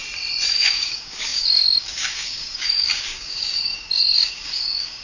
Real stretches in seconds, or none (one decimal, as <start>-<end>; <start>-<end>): 0.0-0.5